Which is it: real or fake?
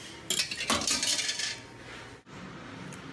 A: real